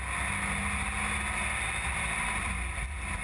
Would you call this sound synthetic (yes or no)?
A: no